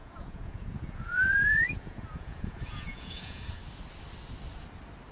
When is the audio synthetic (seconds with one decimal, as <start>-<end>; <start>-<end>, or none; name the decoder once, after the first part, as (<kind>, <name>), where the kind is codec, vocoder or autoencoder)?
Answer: 0.0-3.6 (vocoder, Vocos)